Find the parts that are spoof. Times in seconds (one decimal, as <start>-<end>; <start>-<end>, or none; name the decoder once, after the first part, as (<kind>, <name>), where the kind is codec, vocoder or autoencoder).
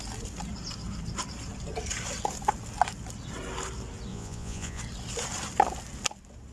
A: 4.1-4.8 (vocoder, Vocos)